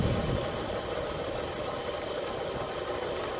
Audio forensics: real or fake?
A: real